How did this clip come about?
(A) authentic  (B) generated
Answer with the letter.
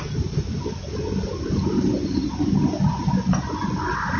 A